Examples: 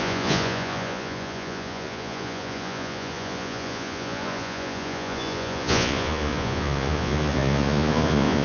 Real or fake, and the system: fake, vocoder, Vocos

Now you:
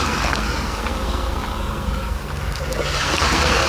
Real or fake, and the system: fake, codec, SNAC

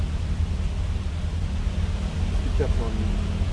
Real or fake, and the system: real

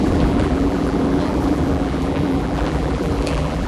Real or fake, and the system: fake, vocoder, BigVGAN v2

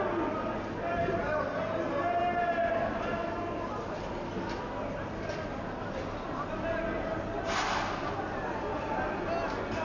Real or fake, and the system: real